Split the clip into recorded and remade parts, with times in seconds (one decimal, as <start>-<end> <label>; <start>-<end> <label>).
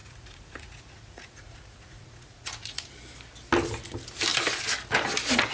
0.0-2.9 remade; 2.9-5.5 recorded